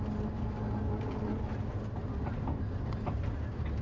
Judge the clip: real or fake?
real